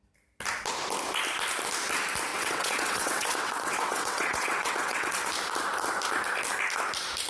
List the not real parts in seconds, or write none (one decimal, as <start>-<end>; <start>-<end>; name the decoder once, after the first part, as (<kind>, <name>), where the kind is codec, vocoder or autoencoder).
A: 2.3-5.3 (vocoder, WaveNeXt)